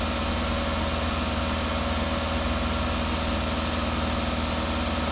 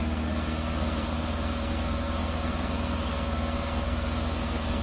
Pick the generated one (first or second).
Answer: second